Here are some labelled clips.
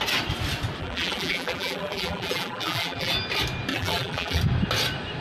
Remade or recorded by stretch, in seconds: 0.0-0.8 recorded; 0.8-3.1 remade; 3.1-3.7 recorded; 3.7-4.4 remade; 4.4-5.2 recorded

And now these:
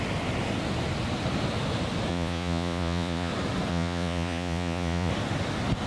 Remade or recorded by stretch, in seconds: 0.0-2.1 recorded; 2.1-3.3 remade; 3.3-3.7 recorded; 3.7-5.1 remade; 5.1-5.9 recorded

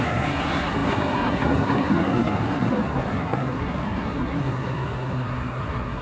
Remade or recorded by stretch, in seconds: 0.0-6.0 remade